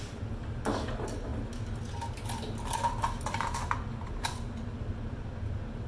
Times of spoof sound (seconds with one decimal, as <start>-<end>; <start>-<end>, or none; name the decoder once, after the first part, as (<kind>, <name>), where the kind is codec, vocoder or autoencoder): none